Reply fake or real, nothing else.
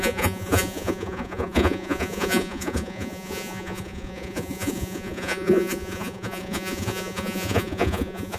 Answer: fake